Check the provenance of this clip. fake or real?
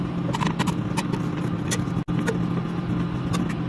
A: real